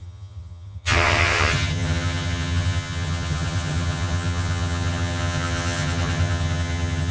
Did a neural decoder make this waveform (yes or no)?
yes